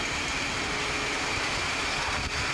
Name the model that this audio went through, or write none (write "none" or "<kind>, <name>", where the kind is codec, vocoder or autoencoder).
none